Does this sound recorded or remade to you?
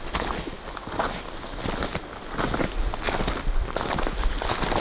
recorded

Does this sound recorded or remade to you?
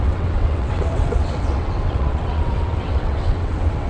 remade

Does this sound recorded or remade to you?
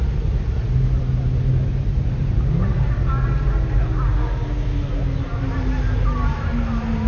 recorded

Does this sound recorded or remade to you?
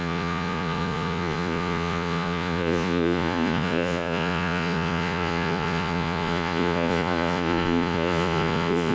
remade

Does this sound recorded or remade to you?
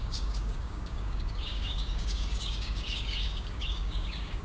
remade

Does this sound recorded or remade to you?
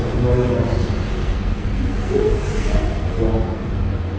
remade